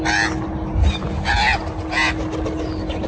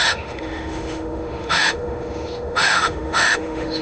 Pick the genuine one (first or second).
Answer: first